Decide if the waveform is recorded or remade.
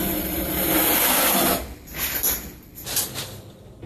recorded